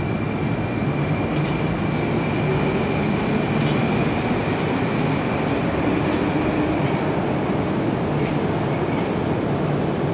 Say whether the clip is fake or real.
real